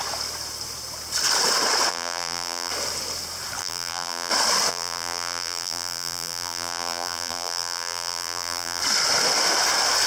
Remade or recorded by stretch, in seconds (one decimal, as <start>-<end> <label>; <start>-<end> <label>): 0.0-1.9 recorded; 1.9-2.7 remade; 2.7-3.6 recorded; 3.6-4.3 remade; 4.3-4.7 recorded; 4.7-8.8 remade; 8.8-10.1 recorded